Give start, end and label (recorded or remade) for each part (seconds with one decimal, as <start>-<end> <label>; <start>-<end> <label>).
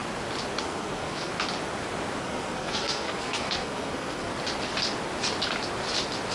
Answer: 0.0-0.6 recorded; 0.6-1.3 remade; 1.3-2.2 recorded; 2.2-4.3 remade; 4.3-6.3 recorded